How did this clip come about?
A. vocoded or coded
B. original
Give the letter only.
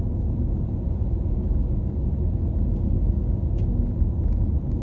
B